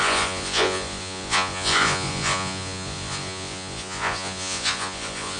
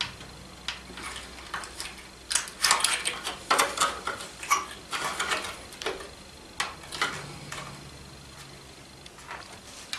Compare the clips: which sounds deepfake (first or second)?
first